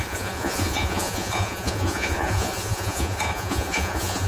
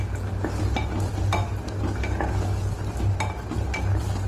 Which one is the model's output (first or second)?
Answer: first